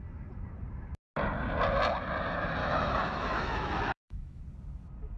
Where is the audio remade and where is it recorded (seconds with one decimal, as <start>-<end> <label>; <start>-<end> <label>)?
0.0-2.6 recorded; 2.6-4.4 remade; 4.4-5.2 recorded